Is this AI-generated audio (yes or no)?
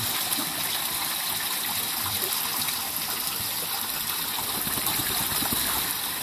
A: no